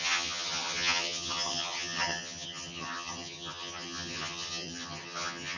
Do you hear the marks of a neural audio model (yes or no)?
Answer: yes